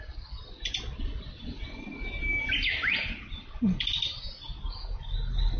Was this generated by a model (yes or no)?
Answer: no